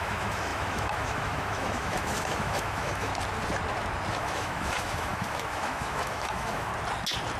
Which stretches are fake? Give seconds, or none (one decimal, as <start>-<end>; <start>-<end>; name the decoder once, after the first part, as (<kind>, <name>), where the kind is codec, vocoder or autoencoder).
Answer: 0.0-3.1 (autoencoder, DAC-VAE); 4.1-6.7